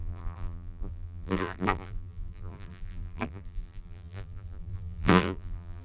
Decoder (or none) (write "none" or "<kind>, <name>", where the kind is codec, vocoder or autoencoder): vocoder, BigVGAN v2